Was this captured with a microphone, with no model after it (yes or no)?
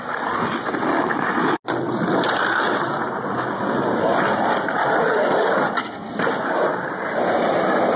yes